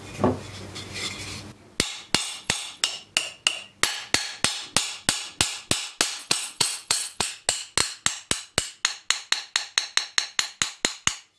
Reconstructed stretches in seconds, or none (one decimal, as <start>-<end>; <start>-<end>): 2.2-2.8; 6.2-7.3